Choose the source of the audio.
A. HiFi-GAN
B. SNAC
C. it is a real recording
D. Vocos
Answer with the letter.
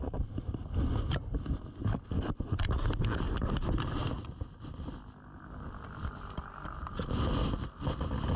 C